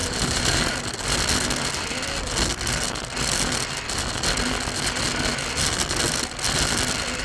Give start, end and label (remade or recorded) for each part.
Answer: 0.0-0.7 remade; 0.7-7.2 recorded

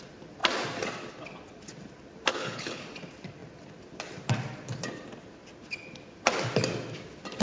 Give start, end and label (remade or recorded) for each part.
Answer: 0.0-2.3 recorded; 2.3-2.8 remade; 2.8-7.4 recorded